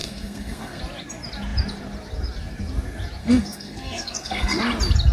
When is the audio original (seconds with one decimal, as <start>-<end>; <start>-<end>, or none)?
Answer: 0.8-3.2; 4.6-5.1